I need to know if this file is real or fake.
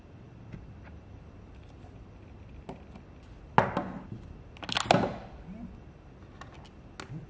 real